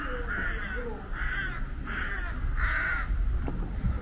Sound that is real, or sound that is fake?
real